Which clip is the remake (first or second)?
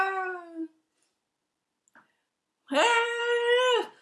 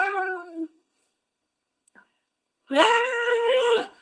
second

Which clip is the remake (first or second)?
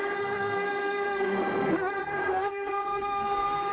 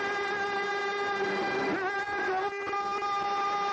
first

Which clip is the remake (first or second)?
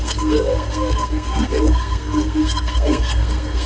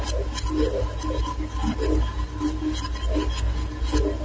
first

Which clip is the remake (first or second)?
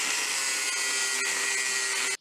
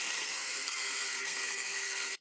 second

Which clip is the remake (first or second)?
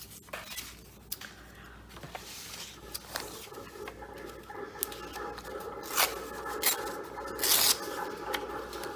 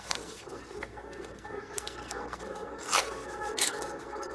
second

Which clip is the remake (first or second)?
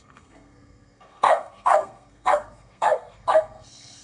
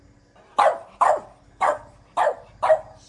first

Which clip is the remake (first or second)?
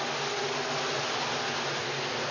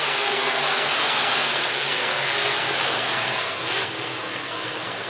second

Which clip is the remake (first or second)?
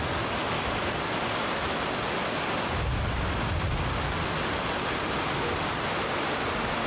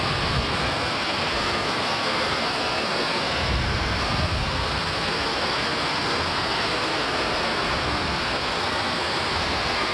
second